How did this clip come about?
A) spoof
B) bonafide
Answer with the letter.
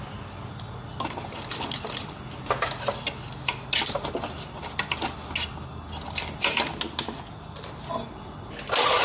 B